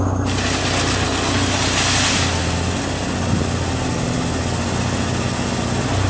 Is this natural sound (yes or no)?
yes